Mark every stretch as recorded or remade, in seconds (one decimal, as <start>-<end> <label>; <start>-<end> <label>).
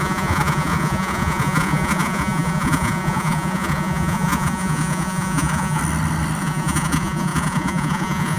0.0-5.8 remade; 5.8-6.4 recorded; 6.4-8.4 remade